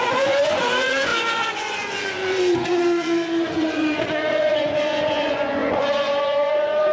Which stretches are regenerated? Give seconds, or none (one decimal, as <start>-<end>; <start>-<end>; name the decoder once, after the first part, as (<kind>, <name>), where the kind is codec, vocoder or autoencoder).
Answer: 0.0-6.9 (vocoder, Vocos)